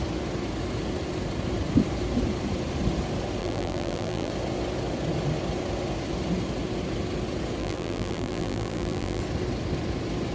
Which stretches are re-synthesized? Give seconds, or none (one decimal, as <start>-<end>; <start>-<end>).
3.4-4.3; 7.6-9.2